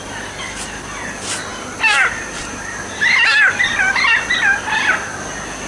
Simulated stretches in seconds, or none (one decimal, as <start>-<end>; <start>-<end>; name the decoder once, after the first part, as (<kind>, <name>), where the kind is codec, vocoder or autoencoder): none